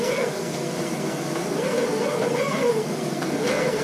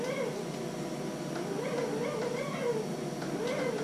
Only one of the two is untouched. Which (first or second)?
second